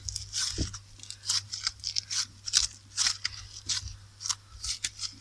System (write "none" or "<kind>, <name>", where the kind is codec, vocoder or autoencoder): none